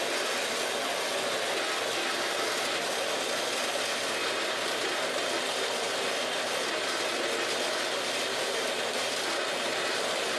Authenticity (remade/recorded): recorded